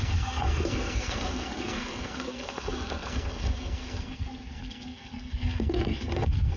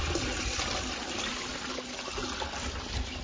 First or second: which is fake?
first